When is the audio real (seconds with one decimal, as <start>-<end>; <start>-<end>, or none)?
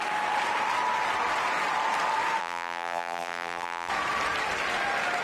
0.0-2.4; 3.9-5.2